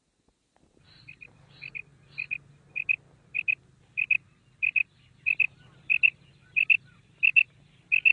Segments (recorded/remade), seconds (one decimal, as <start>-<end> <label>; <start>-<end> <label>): 0.0-8.1 recorded